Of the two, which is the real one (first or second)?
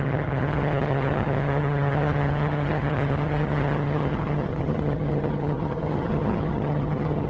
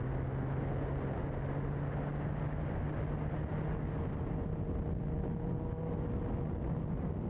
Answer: second